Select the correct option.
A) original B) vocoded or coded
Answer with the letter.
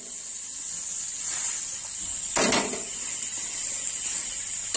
A